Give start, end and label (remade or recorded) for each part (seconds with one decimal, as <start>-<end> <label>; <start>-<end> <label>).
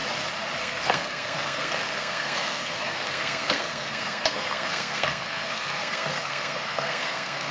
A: 0.0-0.6 recorded; 0.6-7.5 remade